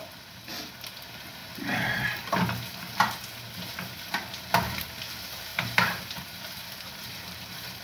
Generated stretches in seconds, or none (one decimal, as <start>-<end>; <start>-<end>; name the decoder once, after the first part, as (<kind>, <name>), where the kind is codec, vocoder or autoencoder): 1.4-2.3 (vocoder, BigVGAN v2); 5.5-7.8